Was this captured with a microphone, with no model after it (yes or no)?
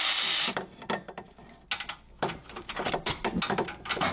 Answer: yes